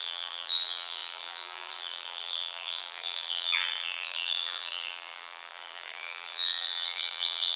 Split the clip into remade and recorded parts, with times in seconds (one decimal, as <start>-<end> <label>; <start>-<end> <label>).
0.0-7.6 remade